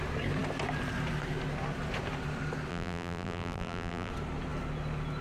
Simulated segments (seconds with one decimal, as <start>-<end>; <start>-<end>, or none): 2.7-4.1